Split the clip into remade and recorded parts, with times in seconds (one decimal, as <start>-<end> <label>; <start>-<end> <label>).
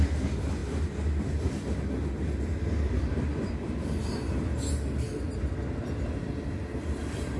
0.0-0.6 remade; 0.6-1.2 recorded; 1.2-4.5 remade; 4.5-6.8 recorded; 6.8-7.4 remade